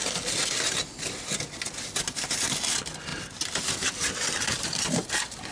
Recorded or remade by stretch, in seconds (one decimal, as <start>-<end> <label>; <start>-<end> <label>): 0.0-5.5 recorded

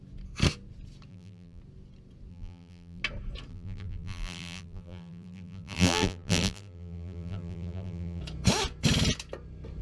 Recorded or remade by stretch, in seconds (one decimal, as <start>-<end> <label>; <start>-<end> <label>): 0.0-1.1 recorded; 1.1-1.6 remade; 1.6-2.3 recorded; 2.3-3.0 remade; 3.0-3.5 recorded; 3.5-8.2 remade; 8.2-9.8 recorded

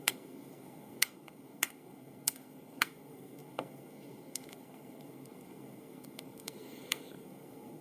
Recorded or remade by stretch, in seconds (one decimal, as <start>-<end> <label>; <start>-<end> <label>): 0.0-7.8 remade

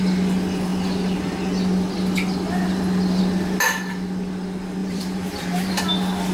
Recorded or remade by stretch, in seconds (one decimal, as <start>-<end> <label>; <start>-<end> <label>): 0.0-4.8 recorded; 4.8-5.8 remade; 5.8-6.3 recorded

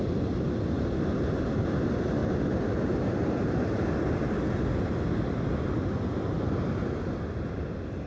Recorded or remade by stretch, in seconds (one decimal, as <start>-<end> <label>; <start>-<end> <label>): 0.0-8.1 recorded